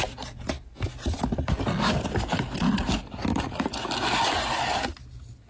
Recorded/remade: recorded